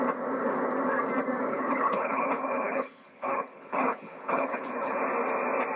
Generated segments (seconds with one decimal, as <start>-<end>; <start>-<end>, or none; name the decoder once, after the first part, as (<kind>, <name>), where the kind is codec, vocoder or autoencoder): 1.5-5.0 (codec, HILCodec)